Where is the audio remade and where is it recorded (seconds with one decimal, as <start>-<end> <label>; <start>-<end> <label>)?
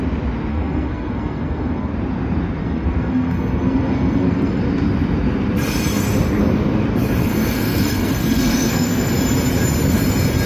0.0-0.5 recorded; 0.5-1.9 remade; 1.9-2.6 recorded; 2.6-4.6 remade; 4.6-7.2 recorded; 7.2-9.1 remade; 9.1-10.5 recorded